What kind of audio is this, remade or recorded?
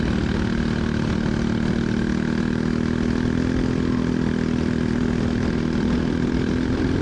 recorded